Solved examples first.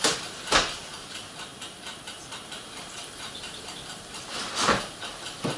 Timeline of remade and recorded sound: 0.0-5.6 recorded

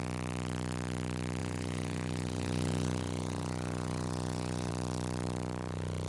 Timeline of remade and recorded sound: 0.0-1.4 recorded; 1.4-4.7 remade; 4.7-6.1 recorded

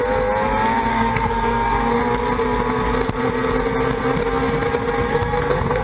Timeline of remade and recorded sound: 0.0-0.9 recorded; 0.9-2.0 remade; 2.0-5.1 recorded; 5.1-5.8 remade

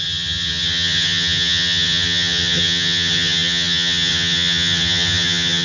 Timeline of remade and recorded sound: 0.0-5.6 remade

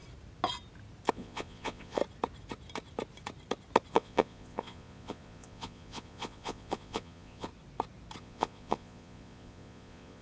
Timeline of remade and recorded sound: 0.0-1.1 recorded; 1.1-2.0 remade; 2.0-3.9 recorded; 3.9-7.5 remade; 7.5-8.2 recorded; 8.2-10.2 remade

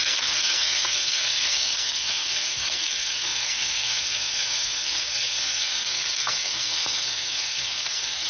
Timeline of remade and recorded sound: 0.0-8.3 remade

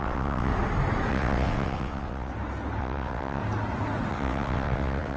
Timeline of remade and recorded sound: 0.0-0.5 remade; 0.5-1.1 recorded; 1.1-2.3 remade; 2.3-2.8 recorded; 2.8-3.4 remade; 3.4-4.1 recorded; 4.1-5.2 remade